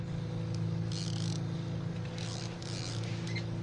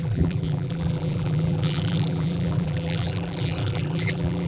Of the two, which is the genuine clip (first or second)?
first